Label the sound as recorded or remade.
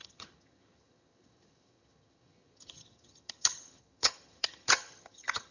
remade